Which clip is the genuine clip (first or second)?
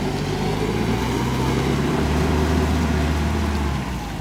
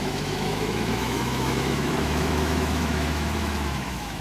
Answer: first